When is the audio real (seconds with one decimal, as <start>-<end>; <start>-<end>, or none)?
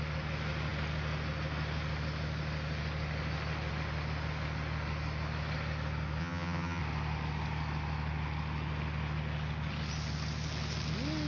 0.0-6.2; 6.8-11.3